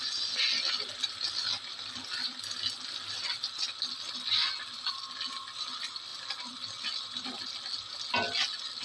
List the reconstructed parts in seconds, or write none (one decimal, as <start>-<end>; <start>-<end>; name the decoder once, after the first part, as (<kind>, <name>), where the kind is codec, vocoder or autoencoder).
none